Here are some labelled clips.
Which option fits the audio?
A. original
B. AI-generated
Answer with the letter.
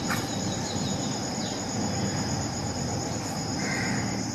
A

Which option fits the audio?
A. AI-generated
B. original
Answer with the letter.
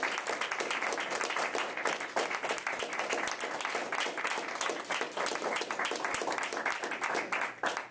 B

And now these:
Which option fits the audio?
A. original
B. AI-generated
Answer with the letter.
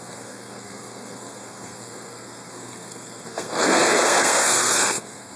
B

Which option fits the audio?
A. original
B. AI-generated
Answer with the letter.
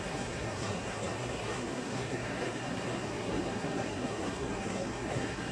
B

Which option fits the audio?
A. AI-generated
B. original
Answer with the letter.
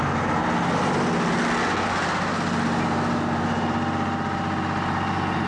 B